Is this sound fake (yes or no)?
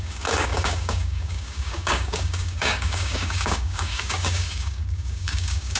yes